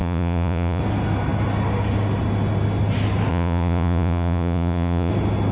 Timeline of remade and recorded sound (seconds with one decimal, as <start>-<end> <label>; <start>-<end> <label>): 0.0-0.8 remade; 0.8-3.3 recorded; 3.3-5.1 remade; 5.1-5.5 recorded